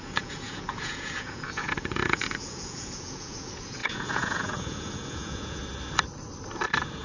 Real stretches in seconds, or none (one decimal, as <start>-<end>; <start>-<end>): 5.6-7.0